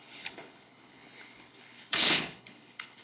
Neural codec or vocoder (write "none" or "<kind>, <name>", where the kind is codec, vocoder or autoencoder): codec, HILCodec